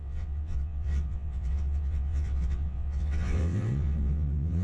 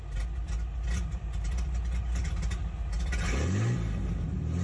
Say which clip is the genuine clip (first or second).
second